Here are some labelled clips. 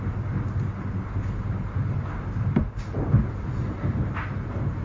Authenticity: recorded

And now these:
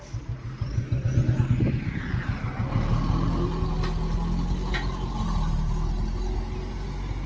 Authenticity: recorded